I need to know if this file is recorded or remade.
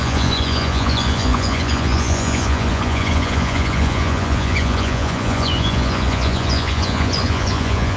remade